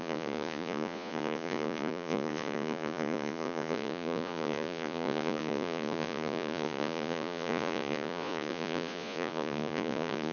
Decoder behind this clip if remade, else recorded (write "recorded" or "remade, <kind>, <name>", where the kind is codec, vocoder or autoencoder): remade, vocoder, Vocos